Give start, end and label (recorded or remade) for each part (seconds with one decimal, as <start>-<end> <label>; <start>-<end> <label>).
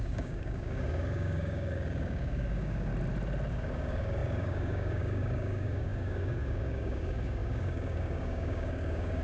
0.0-2.9 remade; 2.9-3.5 recorded; 3.5-9.2 remade